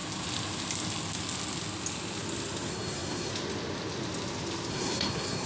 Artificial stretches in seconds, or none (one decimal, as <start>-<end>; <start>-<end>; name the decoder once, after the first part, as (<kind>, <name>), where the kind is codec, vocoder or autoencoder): 2.7-3.3 (codec, SNAC); 4.7-5.5

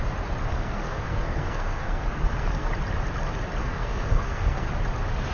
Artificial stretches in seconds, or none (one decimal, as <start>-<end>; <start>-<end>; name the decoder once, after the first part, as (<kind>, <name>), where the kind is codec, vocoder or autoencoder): 0.5-2.7 (codec, SNAC); 3.6-4.7

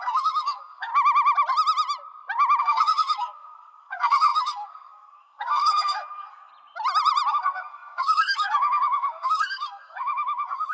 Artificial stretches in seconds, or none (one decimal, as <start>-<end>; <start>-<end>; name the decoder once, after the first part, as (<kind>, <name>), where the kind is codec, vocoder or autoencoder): 0.0-0.9 (codec, SNAC); 2.6-6.5; 7.3-10.7

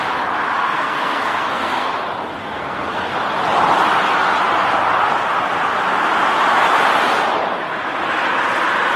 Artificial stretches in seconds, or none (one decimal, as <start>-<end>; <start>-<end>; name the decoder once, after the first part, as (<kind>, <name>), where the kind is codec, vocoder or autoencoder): 0.6-1.9 (codec, SNAC); 2.4-3.1

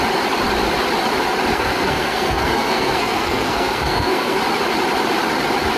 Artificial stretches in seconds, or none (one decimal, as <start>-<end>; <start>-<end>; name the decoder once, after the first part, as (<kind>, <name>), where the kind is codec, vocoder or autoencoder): 1.5-4.4 (codec, SNAC)

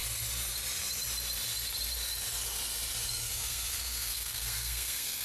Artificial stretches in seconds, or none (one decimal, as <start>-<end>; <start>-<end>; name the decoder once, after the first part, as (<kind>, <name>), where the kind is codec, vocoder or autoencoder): 3.1-5.2 (codec, SNAC)

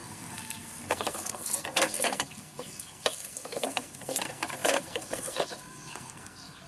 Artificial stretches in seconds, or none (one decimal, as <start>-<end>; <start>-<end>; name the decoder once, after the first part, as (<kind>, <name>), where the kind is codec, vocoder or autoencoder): 0.0-6.7 (codec, SNAC)

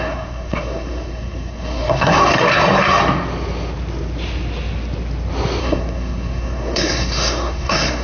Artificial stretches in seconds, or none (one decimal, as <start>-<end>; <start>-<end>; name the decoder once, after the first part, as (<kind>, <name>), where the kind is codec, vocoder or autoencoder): 0.0-2.2 (codec, SNAC); 5.6-8.0